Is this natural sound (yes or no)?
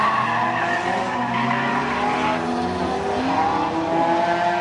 yes